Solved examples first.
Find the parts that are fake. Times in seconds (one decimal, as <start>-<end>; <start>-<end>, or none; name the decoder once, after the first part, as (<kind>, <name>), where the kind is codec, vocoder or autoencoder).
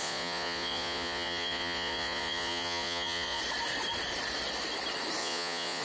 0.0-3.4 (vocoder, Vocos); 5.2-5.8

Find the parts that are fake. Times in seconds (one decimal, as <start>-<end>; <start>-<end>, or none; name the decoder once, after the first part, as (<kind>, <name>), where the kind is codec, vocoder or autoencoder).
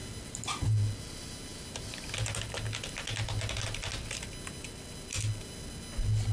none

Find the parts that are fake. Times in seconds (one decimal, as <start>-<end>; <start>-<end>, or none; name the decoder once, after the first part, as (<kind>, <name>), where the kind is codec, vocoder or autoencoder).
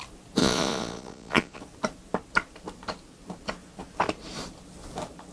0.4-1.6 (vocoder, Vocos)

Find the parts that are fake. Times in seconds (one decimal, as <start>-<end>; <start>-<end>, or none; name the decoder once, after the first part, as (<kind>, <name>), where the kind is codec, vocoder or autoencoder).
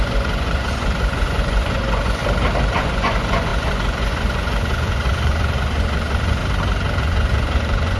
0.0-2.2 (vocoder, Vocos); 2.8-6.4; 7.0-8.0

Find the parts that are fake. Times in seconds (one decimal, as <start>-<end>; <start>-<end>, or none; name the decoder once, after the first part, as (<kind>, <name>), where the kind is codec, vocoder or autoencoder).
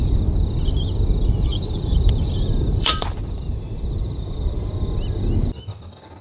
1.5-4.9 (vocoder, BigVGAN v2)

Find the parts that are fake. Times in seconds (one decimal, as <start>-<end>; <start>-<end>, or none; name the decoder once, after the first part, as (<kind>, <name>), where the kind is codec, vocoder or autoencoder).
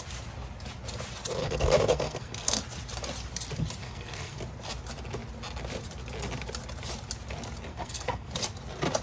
1.4-2.6 (codec, SNAC); 3.8-4.4; 7.7-8.3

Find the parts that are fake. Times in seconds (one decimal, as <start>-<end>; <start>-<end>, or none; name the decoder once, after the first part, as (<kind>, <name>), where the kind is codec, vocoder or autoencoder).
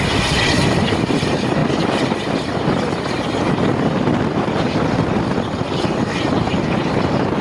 none